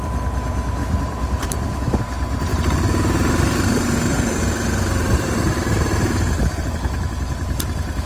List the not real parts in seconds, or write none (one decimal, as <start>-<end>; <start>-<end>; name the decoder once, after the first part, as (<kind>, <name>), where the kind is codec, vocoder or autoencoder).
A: 0.8-2.0 (vocoder, BigVGAN v2); 2.5-4.4; 5.0-6.5